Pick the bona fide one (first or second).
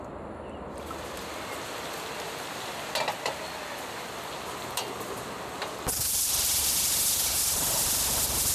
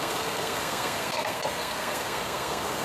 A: first